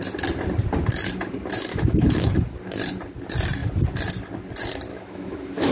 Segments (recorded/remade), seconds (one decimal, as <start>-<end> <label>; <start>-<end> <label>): 0.0-1.7 recorded; 1.7-2.3 remade; 2.3-4.9 recorded; 4.9-5.7 remade